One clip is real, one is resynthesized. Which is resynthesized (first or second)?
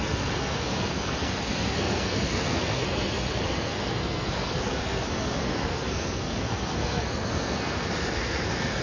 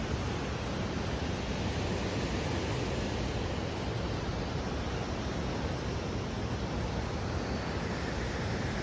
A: first